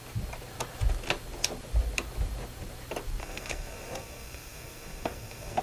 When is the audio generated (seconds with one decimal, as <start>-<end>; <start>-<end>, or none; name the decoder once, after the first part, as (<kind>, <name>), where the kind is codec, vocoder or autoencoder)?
3.2-5.6 (codec, SNAC)